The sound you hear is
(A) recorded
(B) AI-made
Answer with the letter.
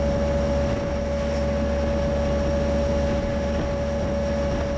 A